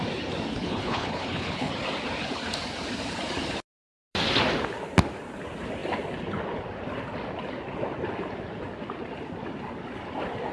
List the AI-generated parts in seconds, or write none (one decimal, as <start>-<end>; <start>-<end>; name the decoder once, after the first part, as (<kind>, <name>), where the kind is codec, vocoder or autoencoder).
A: 0.5-1.7 (codec, HILCodec)